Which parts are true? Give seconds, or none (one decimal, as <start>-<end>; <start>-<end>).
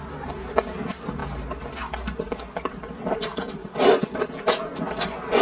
0.0-5.4